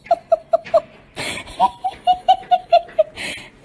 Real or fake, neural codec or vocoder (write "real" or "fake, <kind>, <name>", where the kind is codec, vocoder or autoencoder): real